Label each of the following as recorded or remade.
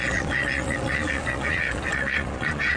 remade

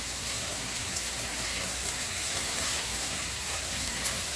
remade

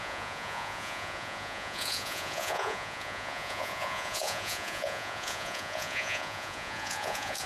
remade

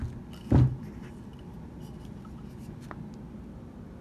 recorded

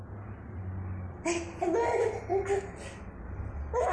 recorded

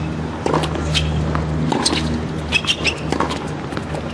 recorded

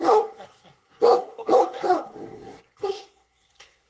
remade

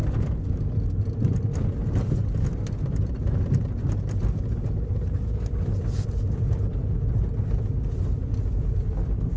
recorded